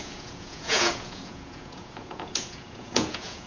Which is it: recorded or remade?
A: remade